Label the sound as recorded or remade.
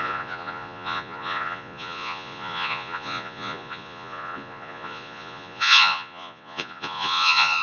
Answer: remade